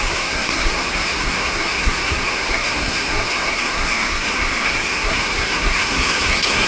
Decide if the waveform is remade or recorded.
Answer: remade